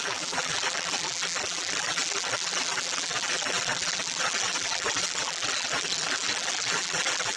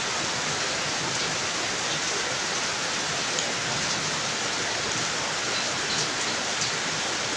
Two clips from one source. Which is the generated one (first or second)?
first